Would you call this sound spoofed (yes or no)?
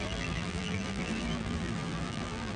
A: yes